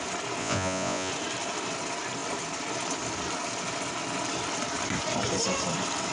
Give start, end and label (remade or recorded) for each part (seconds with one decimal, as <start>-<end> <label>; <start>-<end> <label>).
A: 0.0-0.4 recorded; 0.4-1.1 remade; 1.1-6.1 recorded